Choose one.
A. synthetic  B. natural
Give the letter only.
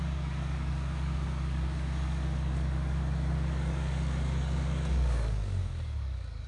A